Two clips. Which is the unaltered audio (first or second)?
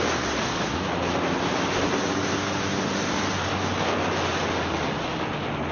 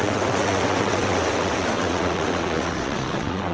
first